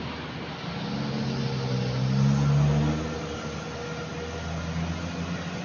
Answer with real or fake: real